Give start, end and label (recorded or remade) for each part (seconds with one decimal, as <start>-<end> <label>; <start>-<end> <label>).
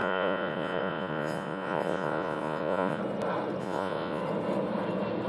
0.0-3.0 remade; 3.0-3.6 recorded; 3.6-4.2 remade; 4.2-5.3 recorded